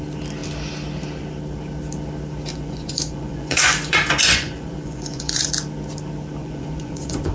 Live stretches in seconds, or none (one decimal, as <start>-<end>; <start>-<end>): 0.0-2.5; 5.5-6.4